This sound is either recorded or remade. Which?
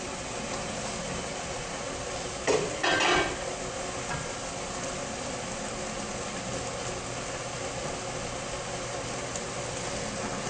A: recorded